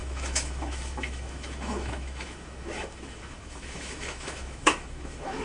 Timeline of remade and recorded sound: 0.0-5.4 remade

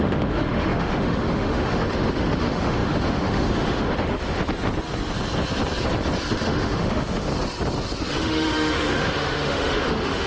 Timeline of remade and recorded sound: 0.0-4.4 remade; 4.4-6.3 recorded; 6.3-7.3 remade; 7.3-8.1 recorded; 8.1-10.3 remade

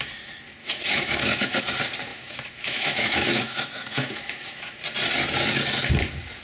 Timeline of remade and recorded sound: 0.0-0.6 recorded; 0.6-1.6 remade; 1.6-2.1 recorded; 2.1-4.8 remade; 4.8-6.4 recorded

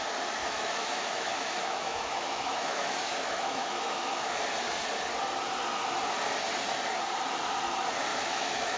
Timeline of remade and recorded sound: 0.0-0.4 recorded; 0.4-4.4 remade; 4.4-8.1 recorded; 8.1-8.8 remade